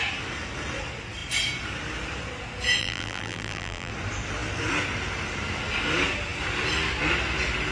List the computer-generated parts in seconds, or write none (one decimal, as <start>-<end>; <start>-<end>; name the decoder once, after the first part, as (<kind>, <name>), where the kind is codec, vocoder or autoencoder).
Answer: 2.8-3.9 (vocoder, BigVGAN v2)

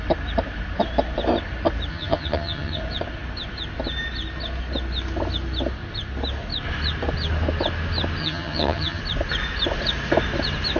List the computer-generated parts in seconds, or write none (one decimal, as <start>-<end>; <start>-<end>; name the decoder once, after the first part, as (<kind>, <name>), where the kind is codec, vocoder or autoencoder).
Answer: 1.9-2.8 (vocoder, HiFi-GAN); 8.2-9.0

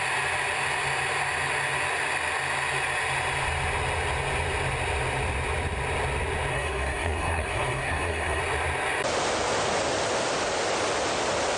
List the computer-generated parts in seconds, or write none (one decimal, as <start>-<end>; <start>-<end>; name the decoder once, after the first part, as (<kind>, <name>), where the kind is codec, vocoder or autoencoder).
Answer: 6.5-8.4 (codec, SNAC)

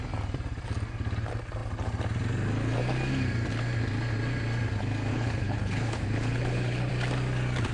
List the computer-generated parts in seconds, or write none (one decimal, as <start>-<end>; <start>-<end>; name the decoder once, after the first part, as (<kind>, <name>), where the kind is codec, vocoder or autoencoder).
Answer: 5.1-6.9 (codec, HILCodec)